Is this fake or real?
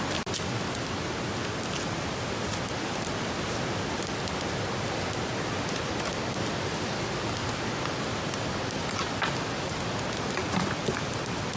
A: real